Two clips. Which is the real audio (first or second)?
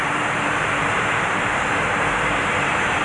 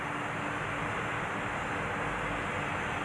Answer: second